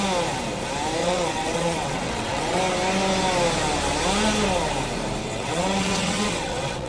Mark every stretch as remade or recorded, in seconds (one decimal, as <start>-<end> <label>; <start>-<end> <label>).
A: 0.0-1.0 recorded; 1.0-2.6 remade; 2.6-5.2 recorded; 5.2-6.9 remade